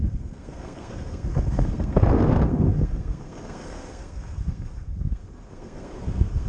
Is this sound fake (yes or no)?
yes